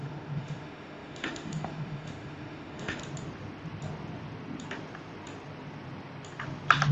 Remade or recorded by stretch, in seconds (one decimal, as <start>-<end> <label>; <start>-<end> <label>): 0.0-3.0 remade; 3.0-6.9 recorded